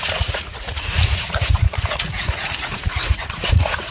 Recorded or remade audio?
remade